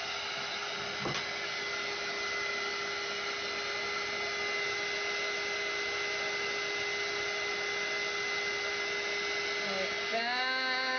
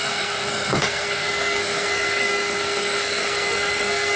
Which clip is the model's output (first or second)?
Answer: second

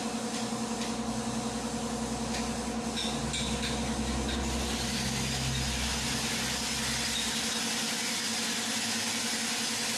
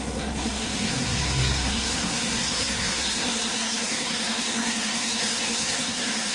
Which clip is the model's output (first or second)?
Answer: second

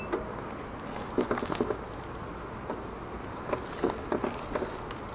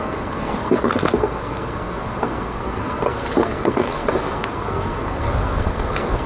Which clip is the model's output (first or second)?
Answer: second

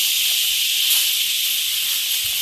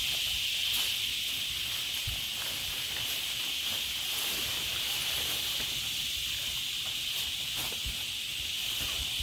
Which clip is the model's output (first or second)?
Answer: first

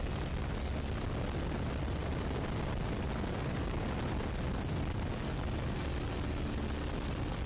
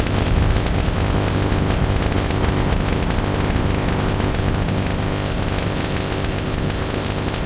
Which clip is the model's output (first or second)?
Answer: second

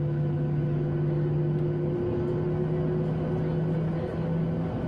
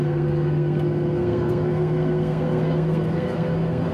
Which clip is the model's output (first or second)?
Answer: second